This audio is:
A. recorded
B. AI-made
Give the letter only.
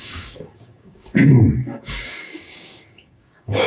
B